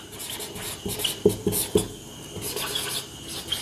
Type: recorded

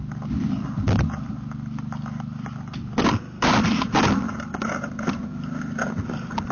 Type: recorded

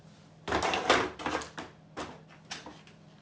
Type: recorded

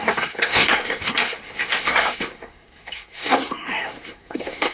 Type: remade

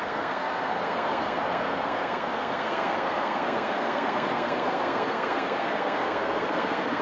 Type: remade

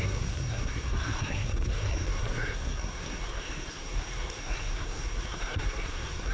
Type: remade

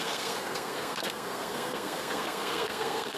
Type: remade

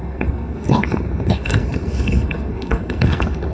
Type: remade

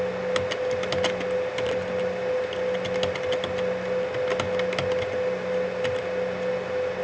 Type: recorded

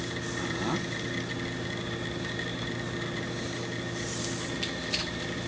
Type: recorded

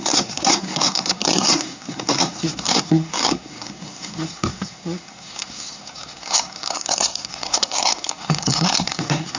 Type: remade